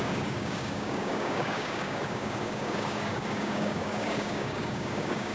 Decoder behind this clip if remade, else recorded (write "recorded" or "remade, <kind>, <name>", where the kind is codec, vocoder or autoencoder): remade, codec, DAC